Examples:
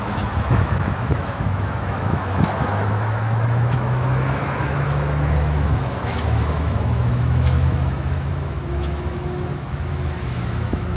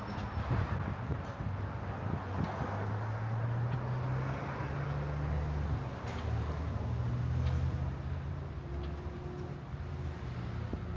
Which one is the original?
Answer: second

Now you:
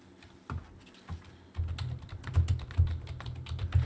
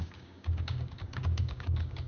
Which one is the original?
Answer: first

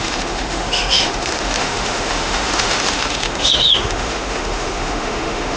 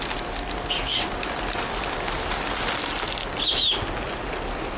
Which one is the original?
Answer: second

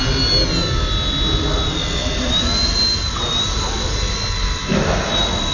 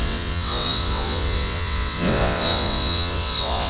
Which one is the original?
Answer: first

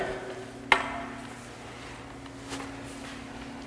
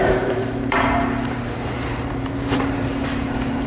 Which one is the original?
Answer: first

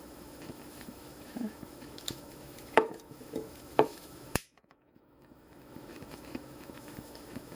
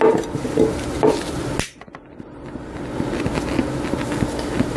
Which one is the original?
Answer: second